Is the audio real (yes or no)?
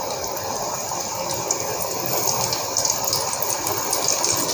yes